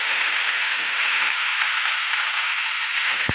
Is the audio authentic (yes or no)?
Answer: no